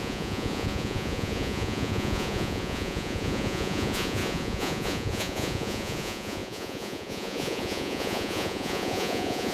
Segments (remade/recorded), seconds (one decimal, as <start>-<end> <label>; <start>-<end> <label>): 0.0-9.5 remade